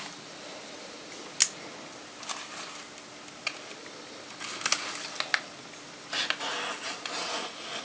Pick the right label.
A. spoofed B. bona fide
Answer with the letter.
B